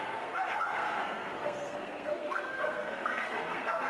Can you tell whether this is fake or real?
fake